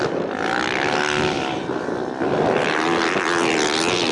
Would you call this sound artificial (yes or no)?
no